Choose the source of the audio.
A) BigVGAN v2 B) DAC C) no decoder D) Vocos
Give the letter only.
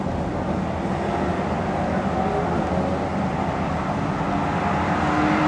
C